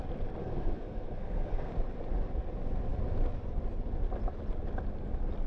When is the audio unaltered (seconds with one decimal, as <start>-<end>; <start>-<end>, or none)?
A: 0.0-0.4; 1.7-5.5